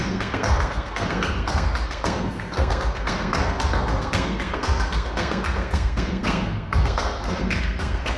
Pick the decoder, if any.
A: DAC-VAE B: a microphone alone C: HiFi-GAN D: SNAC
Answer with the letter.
D